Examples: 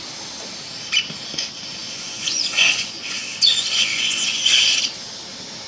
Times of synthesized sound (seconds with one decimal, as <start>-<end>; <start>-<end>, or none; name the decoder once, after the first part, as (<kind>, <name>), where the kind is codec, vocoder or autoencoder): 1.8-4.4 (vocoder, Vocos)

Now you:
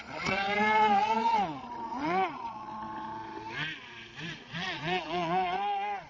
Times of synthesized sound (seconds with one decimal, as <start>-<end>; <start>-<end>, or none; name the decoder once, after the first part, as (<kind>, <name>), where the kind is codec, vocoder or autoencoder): 0.0-2.7 (vocoder, Vocos); 4.3-6.1

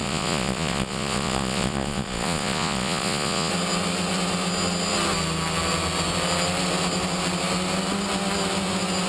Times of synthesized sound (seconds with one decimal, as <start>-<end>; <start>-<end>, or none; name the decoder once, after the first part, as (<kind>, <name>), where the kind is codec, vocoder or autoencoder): 0.0-3.5 (vocoder, Vocos)

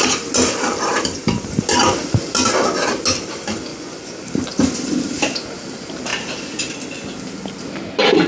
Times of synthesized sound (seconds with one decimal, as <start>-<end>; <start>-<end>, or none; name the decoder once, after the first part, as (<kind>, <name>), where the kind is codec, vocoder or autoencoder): 3.7-4.3 (vocoder, Vocos)

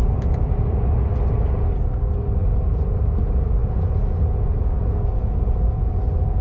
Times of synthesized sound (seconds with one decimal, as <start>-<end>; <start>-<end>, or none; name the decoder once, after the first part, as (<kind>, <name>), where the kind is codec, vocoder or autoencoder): 3.6-6.4 (vocoder, Vocos)